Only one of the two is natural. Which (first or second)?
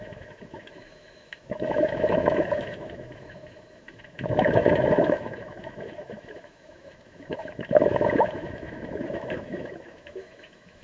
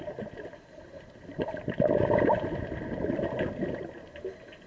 second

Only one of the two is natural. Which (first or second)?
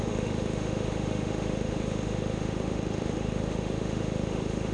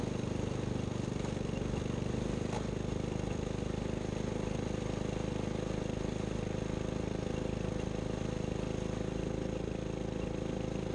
second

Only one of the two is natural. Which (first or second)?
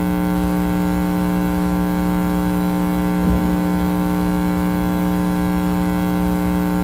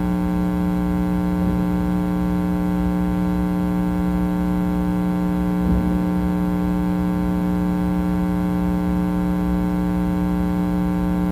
second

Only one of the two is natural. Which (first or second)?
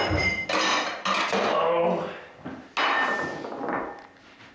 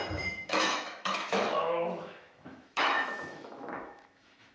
first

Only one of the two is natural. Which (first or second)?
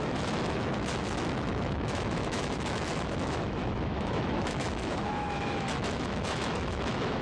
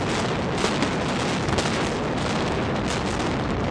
second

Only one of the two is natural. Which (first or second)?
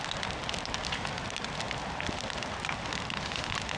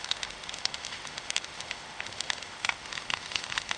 first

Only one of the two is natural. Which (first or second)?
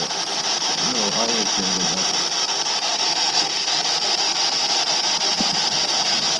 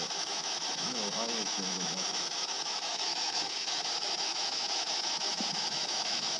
first